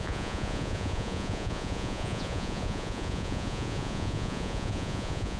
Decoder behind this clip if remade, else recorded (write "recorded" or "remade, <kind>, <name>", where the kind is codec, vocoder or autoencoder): remade, vocoder, Vocos